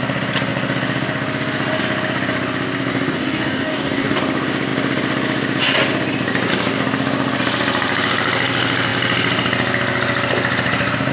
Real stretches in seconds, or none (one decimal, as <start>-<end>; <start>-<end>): 0.0-2.9; 4.2-11.1